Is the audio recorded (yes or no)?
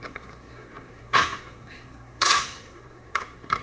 no